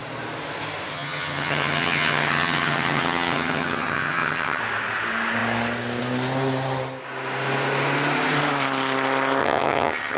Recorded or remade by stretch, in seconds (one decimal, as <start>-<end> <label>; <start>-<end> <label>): 0.0-0.9 recorded; 0.9-4.6 remade; 4.6-9.4 recorded; 9.4-10.2 remade